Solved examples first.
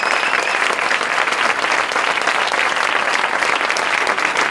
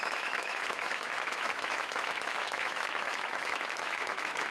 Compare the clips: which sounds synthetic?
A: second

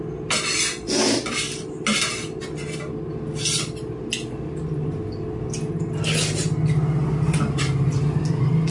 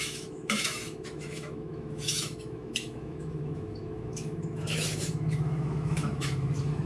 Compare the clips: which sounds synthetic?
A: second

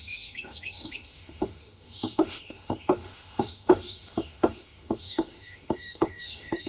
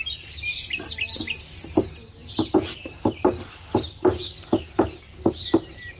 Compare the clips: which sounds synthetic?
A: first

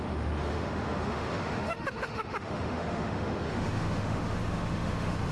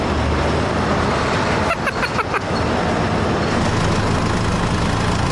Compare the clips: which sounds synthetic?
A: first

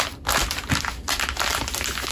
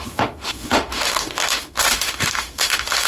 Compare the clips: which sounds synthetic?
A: second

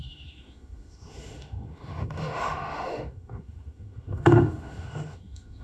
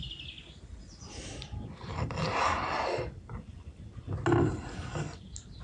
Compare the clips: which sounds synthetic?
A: first